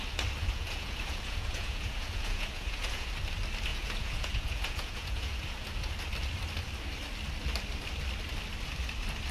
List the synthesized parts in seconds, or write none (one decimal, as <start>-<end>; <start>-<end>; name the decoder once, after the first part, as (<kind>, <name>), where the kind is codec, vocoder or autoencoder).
0.4-3.1 (vocoder, Vocos); 3.7-5.9